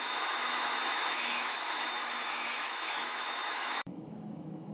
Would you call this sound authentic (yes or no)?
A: no